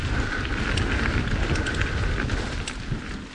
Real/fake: real